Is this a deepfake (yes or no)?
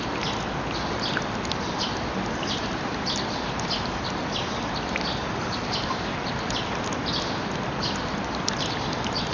no